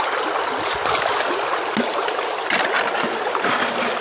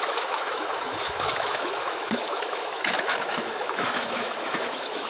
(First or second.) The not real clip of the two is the second